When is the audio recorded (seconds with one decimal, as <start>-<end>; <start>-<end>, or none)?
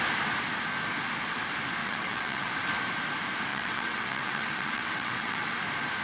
0.0-1.8; 2.5-3.5; 5.6-6.0